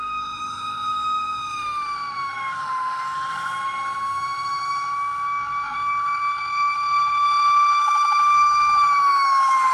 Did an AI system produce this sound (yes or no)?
yes